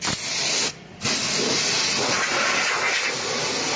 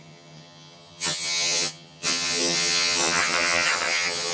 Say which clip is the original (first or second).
first